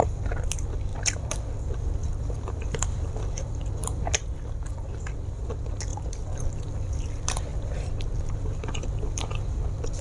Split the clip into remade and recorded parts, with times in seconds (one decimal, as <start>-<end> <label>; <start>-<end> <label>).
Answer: 0.0-0.9 recorded; 0.9-5.5 remade; 5.5-5.9 recorded; 5.9-7.1 remade; 7.1-7.5 recorded; 7.5-10.0 remade